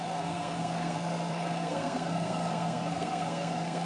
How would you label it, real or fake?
fake